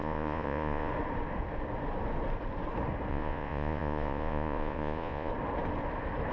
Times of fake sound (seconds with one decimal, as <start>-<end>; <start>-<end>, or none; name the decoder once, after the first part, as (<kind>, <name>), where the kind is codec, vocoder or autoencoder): 0.0-0.9 (vocoder, Vocos); 3.1-5.3